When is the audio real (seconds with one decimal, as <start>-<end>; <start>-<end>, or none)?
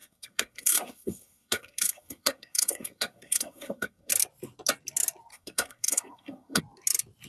4.1-5.3; 6.6-7.3